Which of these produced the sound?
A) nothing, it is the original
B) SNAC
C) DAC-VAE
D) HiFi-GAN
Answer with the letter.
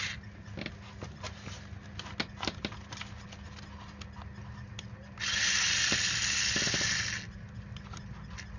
A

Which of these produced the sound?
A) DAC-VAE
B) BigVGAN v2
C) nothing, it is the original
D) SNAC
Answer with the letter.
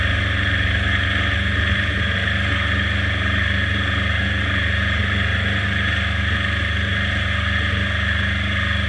C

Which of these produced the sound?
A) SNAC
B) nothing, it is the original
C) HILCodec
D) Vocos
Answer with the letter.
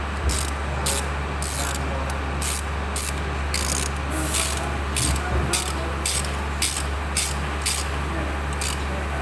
B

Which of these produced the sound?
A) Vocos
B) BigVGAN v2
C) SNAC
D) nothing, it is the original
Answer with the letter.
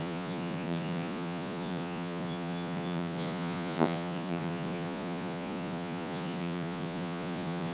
A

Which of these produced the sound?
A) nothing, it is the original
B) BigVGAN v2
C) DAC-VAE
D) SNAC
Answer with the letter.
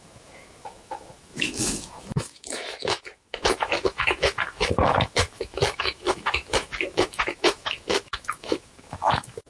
C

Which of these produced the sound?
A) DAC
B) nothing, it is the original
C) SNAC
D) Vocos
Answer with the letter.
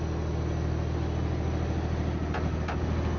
B